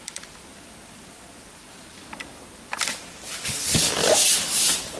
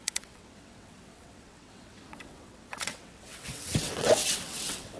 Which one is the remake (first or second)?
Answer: second